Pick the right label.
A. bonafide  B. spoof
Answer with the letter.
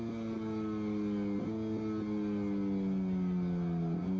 A